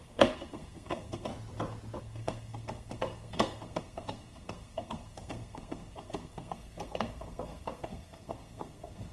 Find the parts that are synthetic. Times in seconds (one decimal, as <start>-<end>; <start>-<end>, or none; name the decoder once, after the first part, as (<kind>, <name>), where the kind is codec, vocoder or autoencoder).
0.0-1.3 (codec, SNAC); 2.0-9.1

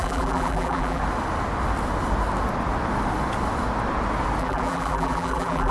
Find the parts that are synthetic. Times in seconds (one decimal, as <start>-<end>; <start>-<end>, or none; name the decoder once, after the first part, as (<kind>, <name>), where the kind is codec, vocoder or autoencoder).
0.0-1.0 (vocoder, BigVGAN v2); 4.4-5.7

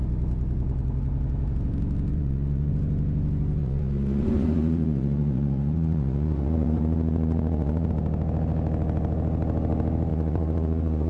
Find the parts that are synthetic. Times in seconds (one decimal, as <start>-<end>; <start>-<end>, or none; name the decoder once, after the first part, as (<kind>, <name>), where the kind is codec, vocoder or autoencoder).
2.1-2.7 (vocoder, Vocos); 3.6-7.9; 10.1-11.1

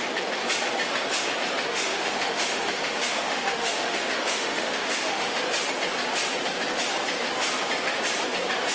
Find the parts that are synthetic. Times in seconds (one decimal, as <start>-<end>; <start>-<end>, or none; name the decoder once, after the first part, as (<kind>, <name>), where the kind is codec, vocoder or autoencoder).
1.7-5.4 (autoencoder, DAC-VAE)